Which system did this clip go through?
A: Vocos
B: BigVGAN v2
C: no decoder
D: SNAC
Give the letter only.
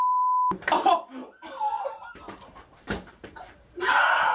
B